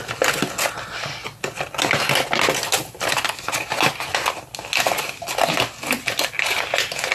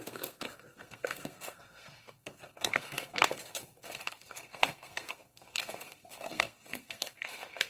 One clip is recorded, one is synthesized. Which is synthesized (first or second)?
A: second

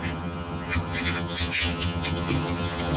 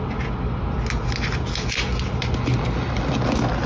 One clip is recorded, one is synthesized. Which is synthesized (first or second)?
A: first